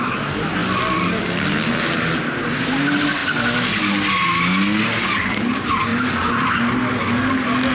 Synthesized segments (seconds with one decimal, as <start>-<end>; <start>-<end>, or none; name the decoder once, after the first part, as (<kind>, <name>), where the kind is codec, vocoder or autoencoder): 0.0-0.6 (vocoder, BigVGAN v2); 1.8-3.2; 4.8-5.9